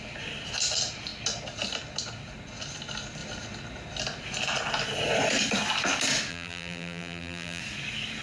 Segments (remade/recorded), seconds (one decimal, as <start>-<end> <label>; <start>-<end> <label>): 0.0-6.3 recorded; 6.3-7.6 remade; 7.6-8.2 recorded